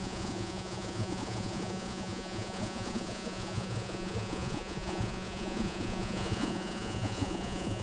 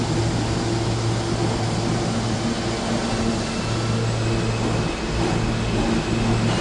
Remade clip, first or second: first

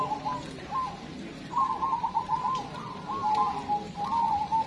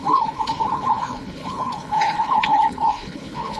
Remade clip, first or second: second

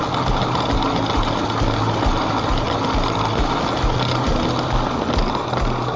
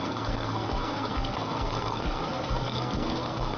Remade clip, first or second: second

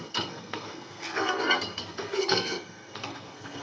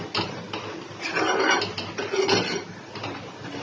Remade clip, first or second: first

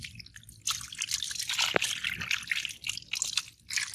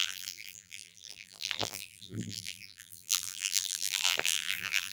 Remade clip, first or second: second